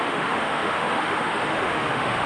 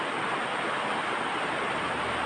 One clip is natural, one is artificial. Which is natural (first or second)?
second